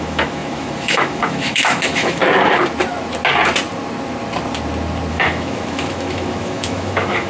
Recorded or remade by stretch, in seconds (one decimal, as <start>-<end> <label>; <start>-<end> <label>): 0.0-2.2 remade; 2.2-5.1 recorded; 5.1-7.3 remade